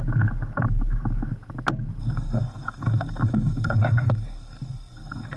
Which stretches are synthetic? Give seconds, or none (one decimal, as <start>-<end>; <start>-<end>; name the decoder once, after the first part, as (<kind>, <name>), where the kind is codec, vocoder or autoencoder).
2.0-5.4 (codec, SNAC)